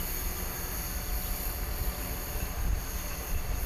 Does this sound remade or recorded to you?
recorded